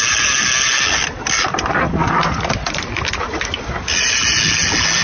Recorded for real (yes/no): yes